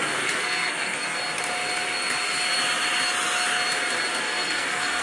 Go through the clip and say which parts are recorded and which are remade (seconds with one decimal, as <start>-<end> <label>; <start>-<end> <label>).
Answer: 0.0-1.2 remade; 1.2-4.2 recorded; 4.2-5.0 remade